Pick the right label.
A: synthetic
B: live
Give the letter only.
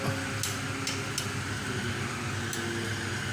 B